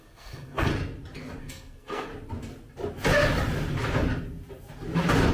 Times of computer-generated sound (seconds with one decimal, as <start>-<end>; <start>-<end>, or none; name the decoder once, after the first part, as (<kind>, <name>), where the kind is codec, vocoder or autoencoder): 0.0-0.7 (codec, SNAC); 1.4-2.1